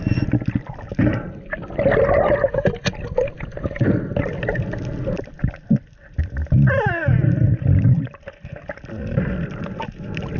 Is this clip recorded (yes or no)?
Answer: yes